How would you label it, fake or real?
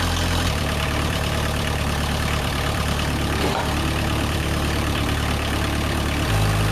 fake